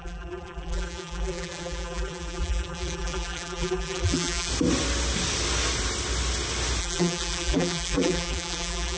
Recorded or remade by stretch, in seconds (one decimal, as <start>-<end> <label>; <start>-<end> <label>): 0.0-4.5 remade; 4.5-6.8 recorded; 6.8-9.0 remade